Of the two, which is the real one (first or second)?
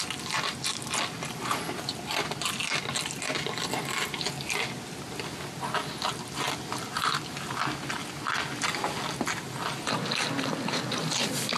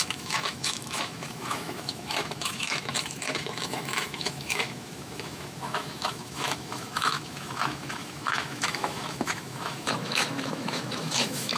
first